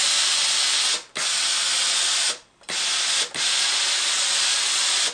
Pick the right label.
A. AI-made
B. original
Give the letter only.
B